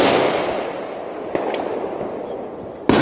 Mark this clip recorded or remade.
recorded